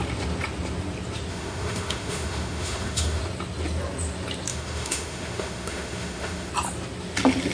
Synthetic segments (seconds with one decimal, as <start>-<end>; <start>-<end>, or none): 1.3-3.2; 4.5-6.5